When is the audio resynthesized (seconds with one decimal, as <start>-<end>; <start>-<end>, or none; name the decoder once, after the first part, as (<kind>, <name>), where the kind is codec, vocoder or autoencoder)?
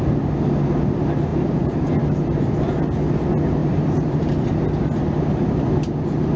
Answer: 1.3-2.4 (vocoder, BigVGAN v2); 3.6-4.3